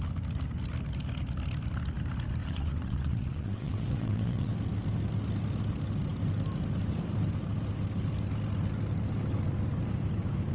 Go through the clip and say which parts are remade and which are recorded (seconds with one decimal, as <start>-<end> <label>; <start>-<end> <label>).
0.0-2.4 recorded; 2.4-4.5 remade; 4.5-10.5 recorded